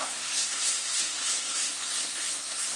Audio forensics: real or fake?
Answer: fake